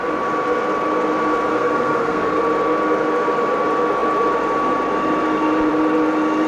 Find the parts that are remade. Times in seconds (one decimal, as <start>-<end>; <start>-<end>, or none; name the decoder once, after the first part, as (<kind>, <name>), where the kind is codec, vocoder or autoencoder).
1.5-2.4 (codec, SNAC)